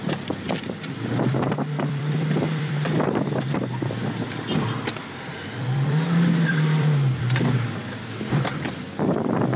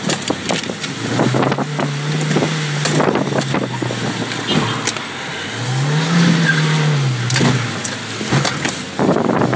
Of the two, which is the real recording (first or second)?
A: second